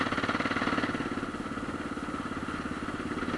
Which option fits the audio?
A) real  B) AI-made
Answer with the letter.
A